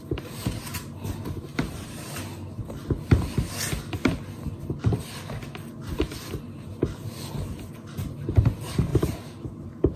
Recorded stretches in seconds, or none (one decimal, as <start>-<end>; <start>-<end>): 0.0-1.5; 2.1-8.9

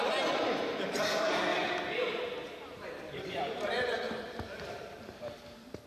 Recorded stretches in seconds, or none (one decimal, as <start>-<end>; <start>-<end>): 0.0-1.5; 4.3-5.9

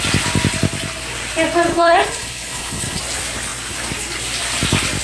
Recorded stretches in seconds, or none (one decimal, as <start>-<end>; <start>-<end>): 0.0-1.7; 3.0-5.0

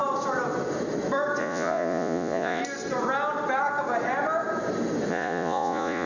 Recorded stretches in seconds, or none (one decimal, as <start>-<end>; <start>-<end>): 0.0-1.4; 2.6-5.1

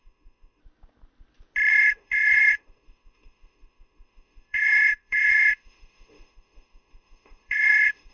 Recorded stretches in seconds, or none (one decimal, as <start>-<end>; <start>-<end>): 0.6-1.7

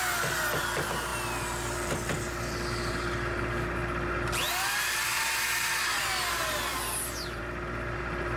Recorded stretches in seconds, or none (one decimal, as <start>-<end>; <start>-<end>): 0.0-8.4

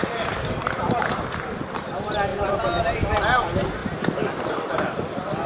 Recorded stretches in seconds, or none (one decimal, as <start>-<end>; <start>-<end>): 1.5-2.3; 3.1-5.5